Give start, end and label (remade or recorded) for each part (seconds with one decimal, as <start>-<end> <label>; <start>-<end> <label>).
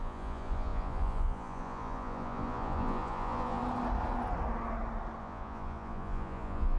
0.0-3.6 remade; 3.6-5.2 recorded; 5.2-6.8 remade